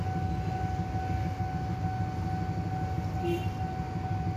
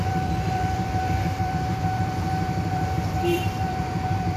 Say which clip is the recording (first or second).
first